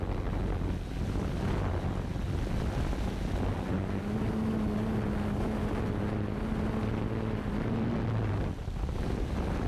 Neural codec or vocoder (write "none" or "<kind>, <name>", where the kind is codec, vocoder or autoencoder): none